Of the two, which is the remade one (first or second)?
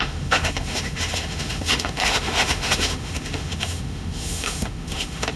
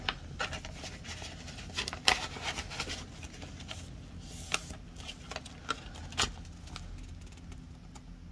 first